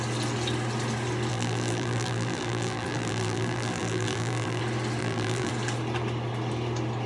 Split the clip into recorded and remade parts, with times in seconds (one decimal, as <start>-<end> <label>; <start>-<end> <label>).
0.0-1.3 recorded; 1.3-4.6 remade; 4.6-5.0 recorded; 5.0-5.5 remade; 5.5-7.1 recorded